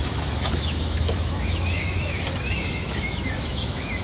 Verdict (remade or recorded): remade